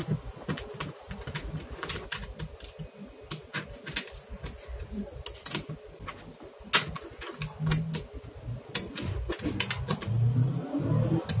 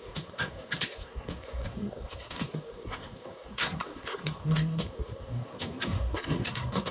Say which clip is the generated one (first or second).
second